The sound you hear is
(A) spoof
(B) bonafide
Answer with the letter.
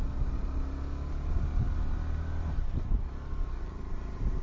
B